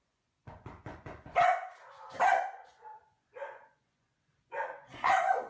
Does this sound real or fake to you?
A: fake